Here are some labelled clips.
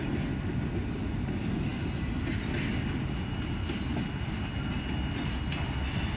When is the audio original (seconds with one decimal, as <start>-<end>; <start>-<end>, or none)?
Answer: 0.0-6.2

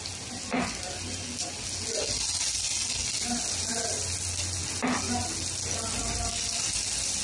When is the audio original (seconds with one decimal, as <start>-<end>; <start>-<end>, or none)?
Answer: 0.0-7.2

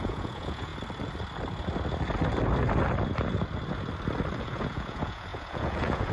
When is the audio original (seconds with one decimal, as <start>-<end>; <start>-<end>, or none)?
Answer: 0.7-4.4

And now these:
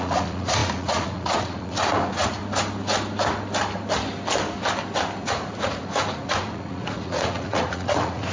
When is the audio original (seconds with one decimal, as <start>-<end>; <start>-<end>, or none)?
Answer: 2.4-5.2

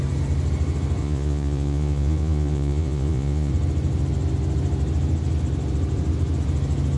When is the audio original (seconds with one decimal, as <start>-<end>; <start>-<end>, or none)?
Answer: 0.0-1.0; 3.5-7.0